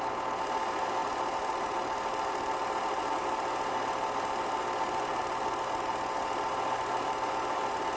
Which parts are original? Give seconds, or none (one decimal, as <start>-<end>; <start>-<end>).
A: 0.0-8.0